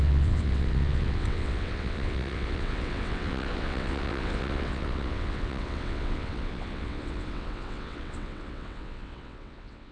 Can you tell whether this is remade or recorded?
remade